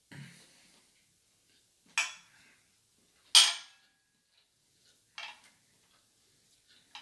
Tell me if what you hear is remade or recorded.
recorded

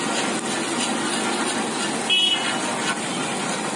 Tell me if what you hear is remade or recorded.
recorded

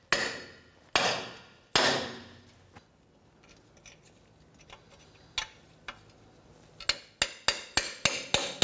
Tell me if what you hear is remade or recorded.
recorded